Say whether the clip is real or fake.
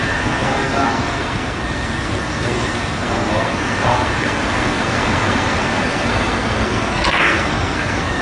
fake